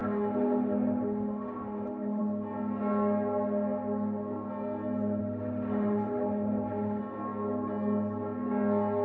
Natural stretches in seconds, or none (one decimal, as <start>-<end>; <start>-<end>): 2.2-5.2; 7.0-9.0